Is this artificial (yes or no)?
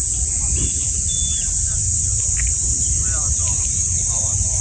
no